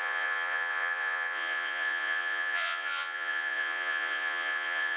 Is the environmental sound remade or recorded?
remade